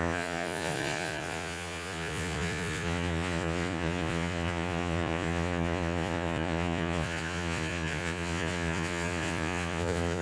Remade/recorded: remade